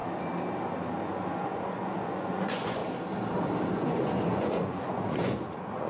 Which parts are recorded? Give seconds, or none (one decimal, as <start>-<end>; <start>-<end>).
0.0-1.0; 2.8-3.7